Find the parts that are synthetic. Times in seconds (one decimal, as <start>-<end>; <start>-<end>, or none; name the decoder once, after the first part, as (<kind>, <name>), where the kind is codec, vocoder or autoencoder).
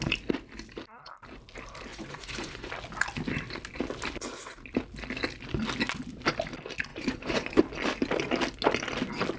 1.9-2.7 (vocoder, Vocos); 6.9-7.6